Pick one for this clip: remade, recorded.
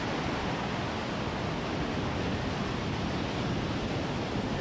recorded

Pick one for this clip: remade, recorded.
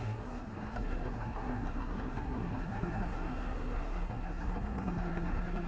remade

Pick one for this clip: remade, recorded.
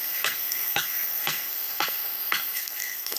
remade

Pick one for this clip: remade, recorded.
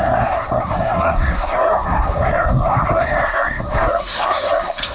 remade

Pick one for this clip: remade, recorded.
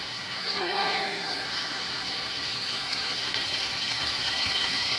remade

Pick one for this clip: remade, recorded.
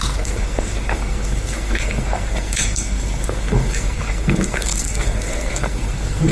remade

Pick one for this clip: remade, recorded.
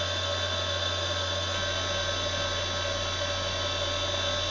recorded